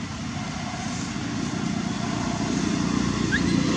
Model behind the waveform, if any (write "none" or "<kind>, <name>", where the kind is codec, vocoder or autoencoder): none